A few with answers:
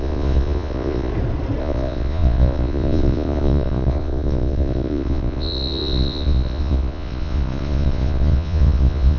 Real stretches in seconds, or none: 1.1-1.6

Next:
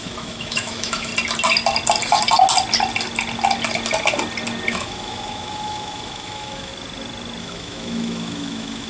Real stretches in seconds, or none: 1.1-4.7; 6.7-7.4